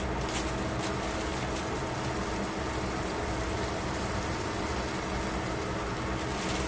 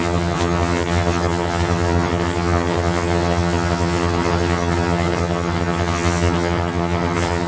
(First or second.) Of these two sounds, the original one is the first